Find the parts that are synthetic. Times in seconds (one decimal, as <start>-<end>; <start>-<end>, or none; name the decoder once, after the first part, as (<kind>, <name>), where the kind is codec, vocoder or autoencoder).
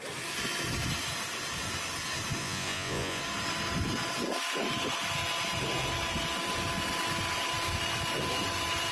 2.4-3.2 (vocoder, Vocos)